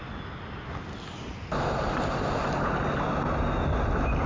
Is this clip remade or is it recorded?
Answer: recorded